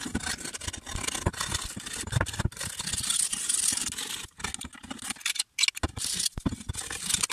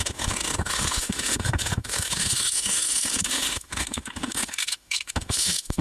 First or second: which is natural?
first